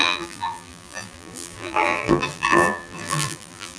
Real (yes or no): no